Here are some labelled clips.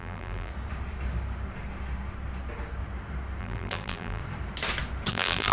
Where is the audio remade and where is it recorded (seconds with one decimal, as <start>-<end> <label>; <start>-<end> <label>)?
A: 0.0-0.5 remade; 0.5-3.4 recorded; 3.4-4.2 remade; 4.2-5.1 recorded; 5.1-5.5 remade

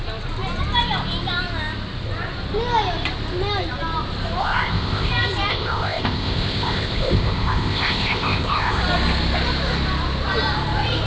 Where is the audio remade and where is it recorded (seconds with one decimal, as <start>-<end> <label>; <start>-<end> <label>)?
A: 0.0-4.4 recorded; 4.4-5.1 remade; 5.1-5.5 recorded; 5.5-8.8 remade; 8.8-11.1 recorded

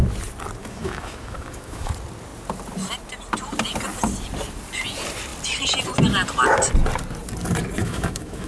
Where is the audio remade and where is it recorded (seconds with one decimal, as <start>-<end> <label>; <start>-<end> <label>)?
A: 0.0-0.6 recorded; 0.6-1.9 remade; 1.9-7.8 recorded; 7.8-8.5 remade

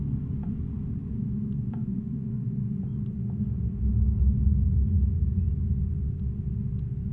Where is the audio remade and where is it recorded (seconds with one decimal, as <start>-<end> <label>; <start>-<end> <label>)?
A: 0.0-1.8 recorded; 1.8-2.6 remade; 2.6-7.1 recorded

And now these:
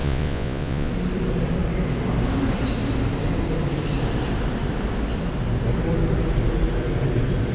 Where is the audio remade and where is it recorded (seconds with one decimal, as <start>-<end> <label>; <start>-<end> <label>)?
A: 0.0-0.9 remade; 0.9-7.5 recorded